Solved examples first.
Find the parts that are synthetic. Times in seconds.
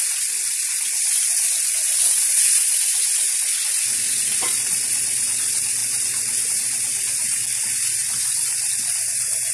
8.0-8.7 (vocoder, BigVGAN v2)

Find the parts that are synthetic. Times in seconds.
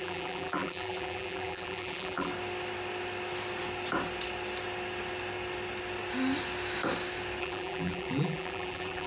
0.0-2.3 (vocoder, BigVGAN v2); 7.4-9.1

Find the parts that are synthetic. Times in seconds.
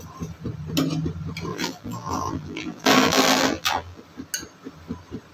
1.5-4.0 (vocoder, BigVGAN v2)